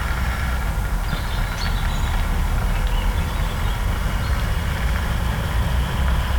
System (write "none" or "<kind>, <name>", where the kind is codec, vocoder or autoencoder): none